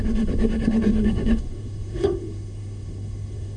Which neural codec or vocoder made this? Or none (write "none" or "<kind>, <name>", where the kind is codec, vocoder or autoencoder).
codec, SNAC